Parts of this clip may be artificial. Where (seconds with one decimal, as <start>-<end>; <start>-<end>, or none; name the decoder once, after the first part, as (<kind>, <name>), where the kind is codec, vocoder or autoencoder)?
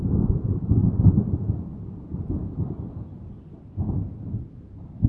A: none